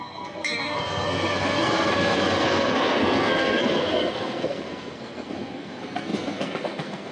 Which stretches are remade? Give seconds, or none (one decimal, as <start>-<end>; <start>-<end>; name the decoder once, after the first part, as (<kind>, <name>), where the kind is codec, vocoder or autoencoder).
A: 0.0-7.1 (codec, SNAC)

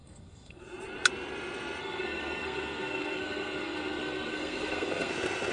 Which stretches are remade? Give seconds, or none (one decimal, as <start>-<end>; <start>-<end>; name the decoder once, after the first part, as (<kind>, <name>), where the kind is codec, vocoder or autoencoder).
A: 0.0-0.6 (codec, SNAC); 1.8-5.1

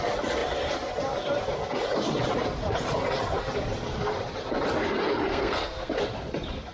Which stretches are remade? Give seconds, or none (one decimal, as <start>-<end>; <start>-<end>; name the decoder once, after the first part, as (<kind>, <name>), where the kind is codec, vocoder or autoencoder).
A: 5.3-5.9 (codec, SNAC)

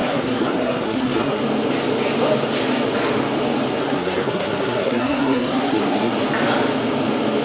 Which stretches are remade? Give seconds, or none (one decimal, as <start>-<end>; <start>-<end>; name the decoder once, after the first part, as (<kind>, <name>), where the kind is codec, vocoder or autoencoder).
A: 0.0-1.4 (codec, SNAC); 3.8-6.1

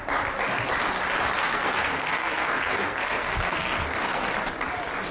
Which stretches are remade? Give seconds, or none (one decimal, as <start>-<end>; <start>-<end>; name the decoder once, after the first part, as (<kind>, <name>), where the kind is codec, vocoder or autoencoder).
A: 1.4-4.3 (codec, SNAC)

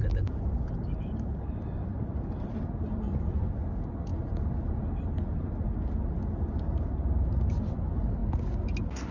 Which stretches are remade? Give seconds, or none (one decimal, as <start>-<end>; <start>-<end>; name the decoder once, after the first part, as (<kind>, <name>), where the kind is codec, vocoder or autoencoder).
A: none

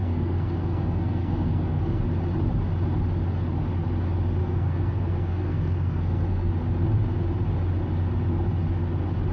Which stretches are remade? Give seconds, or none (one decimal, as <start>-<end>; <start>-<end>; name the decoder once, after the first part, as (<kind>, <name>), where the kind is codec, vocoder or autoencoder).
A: 0.0-2.0 (codec, SNAC); 4.4-6.5